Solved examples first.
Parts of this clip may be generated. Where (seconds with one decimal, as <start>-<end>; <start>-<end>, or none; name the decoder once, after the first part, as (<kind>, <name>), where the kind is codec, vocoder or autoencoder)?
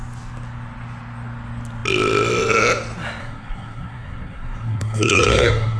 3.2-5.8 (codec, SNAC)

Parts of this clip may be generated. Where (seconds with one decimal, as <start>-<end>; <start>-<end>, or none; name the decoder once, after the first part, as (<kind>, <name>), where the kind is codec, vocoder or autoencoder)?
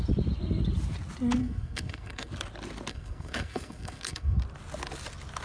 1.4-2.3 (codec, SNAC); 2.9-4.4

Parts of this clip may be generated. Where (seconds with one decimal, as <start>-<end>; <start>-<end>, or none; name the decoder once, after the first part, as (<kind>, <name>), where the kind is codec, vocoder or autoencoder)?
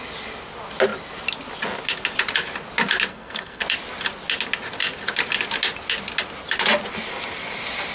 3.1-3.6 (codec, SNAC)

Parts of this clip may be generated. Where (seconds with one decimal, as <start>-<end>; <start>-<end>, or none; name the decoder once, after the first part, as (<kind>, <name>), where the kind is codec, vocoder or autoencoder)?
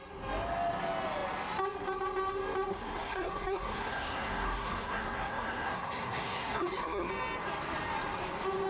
2.7-7.1 (codec, SNAC)